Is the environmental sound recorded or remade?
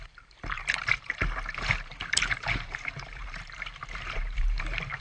remade